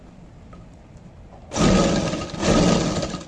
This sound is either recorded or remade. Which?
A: recorded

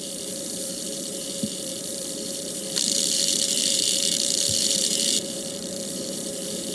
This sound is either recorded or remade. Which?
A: remade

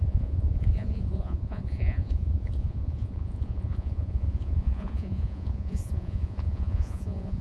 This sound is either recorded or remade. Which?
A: remade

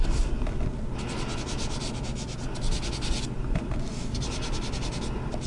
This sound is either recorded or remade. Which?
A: recorded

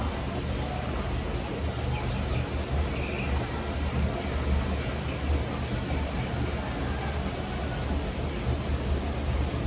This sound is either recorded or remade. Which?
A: recorded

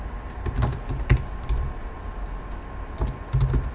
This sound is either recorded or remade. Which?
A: recorded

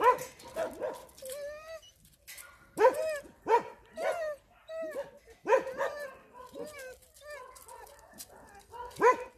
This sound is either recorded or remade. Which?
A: recorded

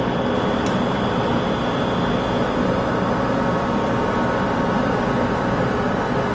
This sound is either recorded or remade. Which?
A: recorded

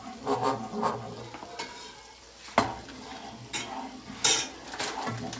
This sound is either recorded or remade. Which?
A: recorded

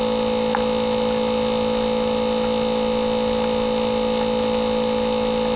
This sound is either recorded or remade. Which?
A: recorded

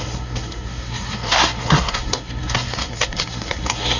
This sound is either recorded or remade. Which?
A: remade